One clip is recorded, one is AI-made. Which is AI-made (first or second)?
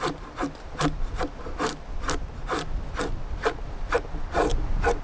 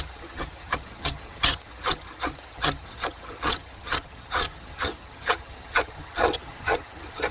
second